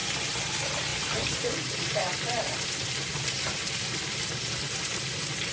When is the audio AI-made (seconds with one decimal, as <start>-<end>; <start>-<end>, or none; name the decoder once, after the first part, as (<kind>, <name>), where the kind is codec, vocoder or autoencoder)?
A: 0.9-4.2 (vocoder, BigVGAN v2)